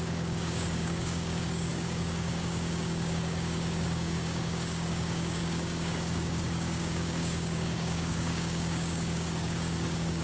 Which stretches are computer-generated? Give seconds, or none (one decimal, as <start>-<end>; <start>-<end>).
0.0-10.2